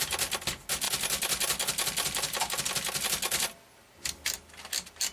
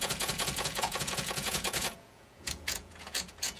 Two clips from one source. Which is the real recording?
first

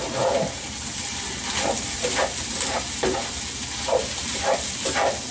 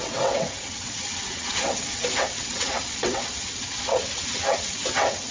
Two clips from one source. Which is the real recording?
first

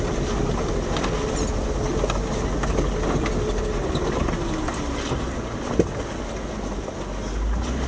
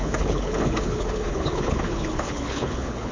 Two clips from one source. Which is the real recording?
first